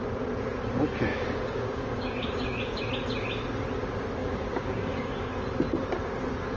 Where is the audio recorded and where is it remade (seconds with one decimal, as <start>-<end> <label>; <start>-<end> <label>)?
0.0-1.1 recorded; 1.1-2.9 remade; 2.9-4.2 recorded; 4.2-5.3 remade; 5.3-6.6 recorded